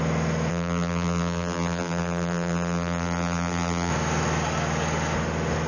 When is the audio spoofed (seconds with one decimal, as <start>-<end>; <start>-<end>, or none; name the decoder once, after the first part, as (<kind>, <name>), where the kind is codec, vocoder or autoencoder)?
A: 0.5-3.9 (vocoder, BigVGAN v2)